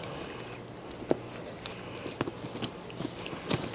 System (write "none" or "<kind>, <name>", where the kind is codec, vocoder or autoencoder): none